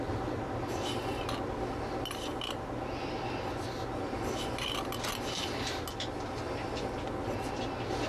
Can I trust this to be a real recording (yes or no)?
yes